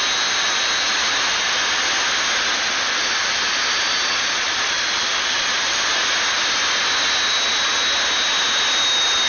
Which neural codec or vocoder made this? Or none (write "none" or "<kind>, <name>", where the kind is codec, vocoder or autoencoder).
none